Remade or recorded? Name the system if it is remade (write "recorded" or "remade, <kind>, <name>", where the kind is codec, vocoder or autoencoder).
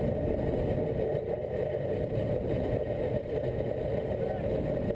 recorded